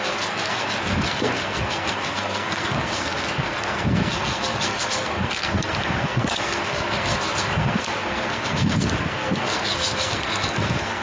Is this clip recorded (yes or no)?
no